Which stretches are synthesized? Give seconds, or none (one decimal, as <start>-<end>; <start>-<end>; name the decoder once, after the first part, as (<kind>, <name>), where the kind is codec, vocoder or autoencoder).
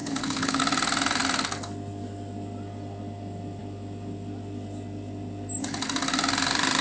0.0-0.6 (codec, HILCodec)